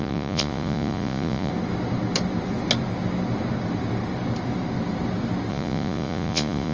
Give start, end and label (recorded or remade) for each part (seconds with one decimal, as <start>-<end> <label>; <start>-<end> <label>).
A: 0.0-1.5 remade; 1.5-5.5 recorded; 5.5-6.7 remade